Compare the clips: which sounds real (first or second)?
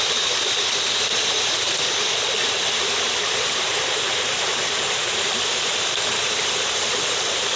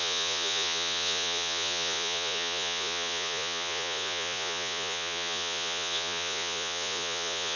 first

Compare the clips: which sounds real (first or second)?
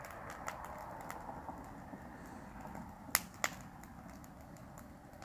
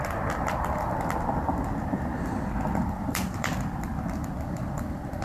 first